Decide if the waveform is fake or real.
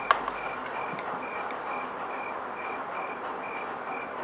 real